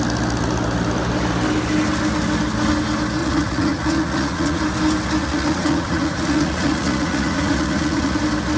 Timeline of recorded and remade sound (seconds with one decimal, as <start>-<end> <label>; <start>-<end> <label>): 0.0-3.2 recorded; 3.2-4.6 remade; 4.6-5.2 recorded; 5.2-8.2 remade; 8.2-8.6 recorded